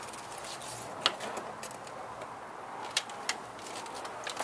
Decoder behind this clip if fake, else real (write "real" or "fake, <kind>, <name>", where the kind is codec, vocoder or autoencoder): real